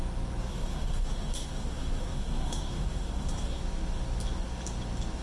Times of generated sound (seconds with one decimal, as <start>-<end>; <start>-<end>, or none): 0.5-3.6

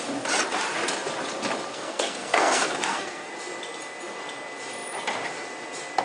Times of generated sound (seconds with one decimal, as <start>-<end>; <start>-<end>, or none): 1.7-3.3

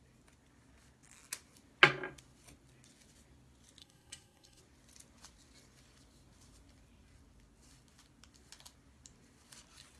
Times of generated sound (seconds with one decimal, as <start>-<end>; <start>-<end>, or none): 3.8-4.6

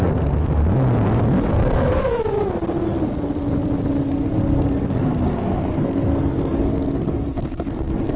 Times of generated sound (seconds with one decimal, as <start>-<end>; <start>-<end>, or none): 0.0-0.6; 1.5-2.0; 4.1-8.2

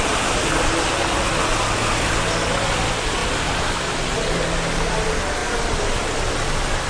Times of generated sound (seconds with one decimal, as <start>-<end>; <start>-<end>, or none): none

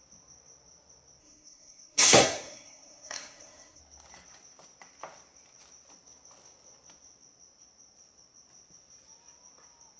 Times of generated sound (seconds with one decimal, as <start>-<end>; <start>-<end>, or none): 1.2-3.8

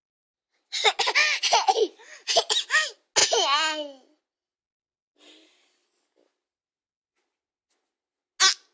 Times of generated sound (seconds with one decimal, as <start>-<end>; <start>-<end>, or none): none